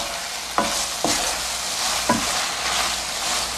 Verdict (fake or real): real